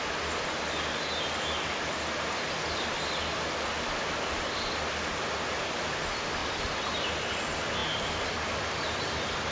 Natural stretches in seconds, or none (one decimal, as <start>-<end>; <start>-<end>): 0.0-6.4; 7.3-9.5